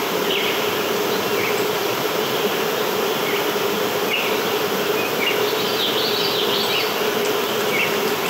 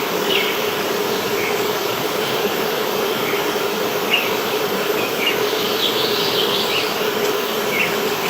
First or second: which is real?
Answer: first